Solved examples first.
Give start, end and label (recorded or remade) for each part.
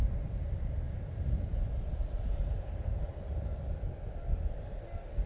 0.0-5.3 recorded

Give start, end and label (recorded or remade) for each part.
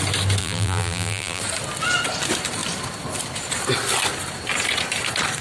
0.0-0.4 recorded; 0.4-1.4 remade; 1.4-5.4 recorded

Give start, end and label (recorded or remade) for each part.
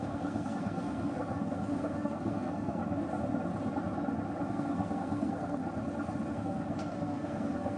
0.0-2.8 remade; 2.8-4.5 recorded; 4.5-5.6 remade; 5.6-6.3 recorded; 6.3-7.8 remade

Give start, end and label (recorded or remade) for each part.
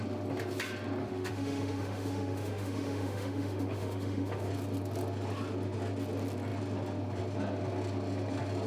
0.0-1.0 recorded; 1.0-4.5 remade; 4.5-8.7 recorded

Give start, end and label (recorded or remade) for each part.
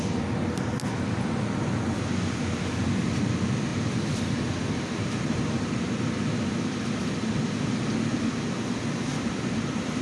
0.0-3.7 recorded; 3.7-6.4 remade; 6.4-9.1 recorded; 9.1-10.0 remade